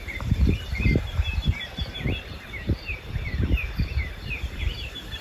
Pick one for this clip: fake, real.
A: fake